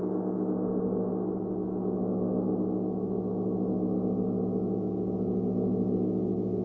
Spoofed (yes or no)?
no